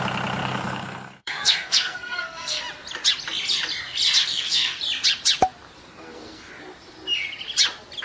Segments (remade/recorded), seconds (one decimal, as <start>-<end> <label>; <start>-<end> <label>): 0.0-0.4 recorded; 0.4-2.6 remade; 2.6-4.2 recorded; 4.2-4.8 remade; 4.8-5.8 recorded; 5.8-6.5 remade; 6.5-8.0 recorded